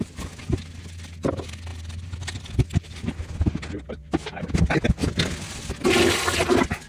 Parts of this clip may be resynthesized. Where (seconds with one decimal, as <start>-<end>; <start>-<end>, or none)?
none

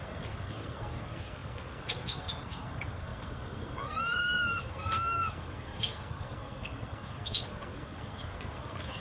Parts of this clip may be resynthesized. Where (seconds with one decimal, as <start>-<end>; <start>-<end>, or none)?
0.0-9.0

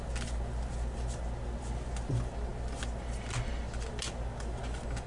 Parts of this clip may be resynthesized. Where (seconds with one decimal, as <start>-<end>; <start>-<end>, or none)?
none

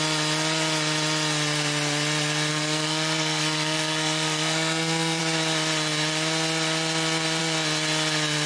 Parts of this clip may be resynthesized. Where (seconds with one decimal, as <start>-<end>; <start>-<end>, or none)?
2.5-5.2

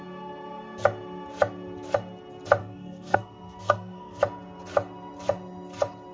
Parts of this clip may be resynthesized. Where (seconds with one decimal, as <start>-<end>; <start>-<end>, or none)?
2.6-4.2

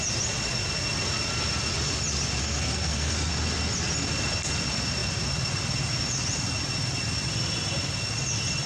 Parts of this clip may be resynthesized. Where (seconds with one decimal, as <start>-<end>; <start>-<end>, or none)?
2.4-3.3

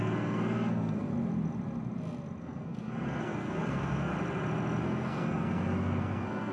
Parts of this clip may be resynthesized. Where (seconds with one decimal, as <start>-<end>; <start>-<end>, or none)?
0.0-1.1; 2.4-4.1; 4.8-6.5

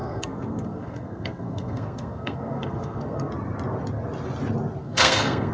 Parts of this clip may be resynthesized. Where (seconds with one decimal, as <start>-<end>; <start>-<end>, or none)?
0.0-3.3; 4.8-5.5